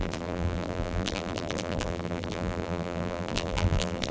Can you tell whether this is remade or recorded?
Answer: remade